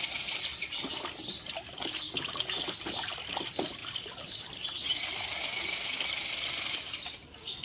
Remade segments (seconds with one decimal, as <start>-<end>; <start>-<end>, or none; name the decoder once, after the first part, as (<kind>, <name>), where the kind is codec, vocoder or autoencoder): 3.8-5.4 (vocoder, BigVGAN v2)